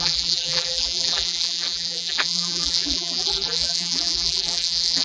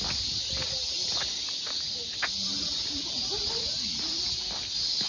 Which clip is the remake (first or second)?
first